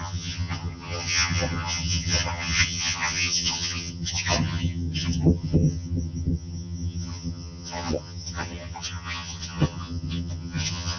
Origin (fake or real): fake